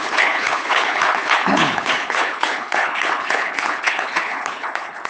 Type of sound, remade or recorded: remade